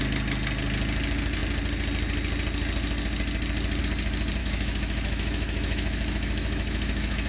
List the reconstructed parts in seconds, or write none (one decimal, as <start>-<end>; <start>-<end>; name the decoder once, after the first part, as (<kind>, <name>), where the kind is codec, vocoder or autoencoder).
4.4-7.3 (autoencoder, DAC-VAE)